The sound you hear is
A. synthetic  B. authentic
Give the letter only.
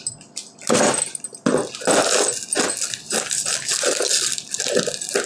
B